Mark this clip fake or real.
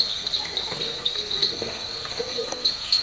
fake